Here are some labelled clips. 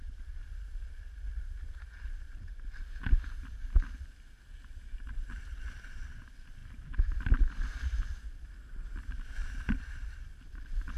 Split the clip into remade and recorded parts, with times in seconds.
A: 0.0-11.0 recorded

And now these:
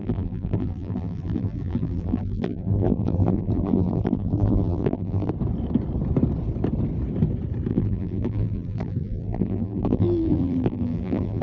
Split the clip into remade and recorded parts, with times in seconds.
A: 0.0-5.3 remade; 5.3-7.7 recorded; 7.7-11.4 remade

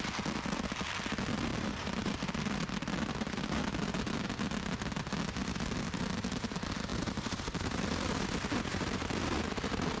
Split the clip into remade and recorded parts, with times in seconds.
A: 0.0-1.5 recorded; 1.5-2.1 remade; 2.1-5.4 recorded; 5.4-6.0 remade; 6.0-6.9 recorded; 6.9-7.8 remade; 7.8-8.7 recorded; 8.7-9.2 remade; 9.2-10.0 recorded

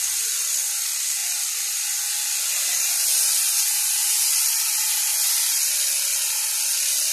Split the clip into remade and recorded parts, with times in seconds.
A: 0.0-7.1 recorded

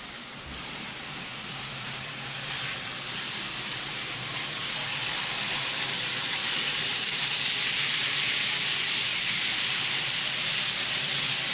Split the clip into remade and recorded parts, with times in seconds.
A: 0.0-9.1 recorded; 9.1-9.9 remade; 9.9-11.5 recorded

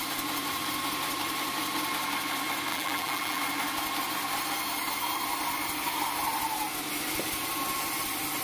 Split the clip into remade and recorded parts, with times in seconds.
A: 0.0-2.7 recorded; 2.7-3.4 remade; 3.4-8.4 recorded